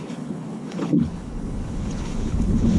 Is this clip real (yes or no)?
no